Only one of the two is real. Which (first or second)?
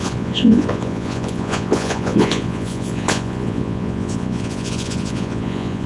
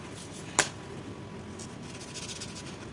second